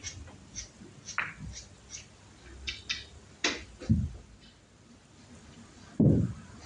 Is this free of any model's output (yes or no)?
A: yes